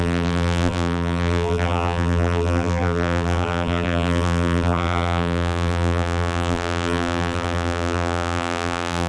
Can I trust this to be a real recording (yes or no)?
no